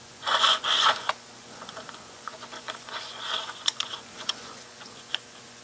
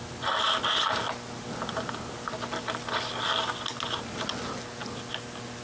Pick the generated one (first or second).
first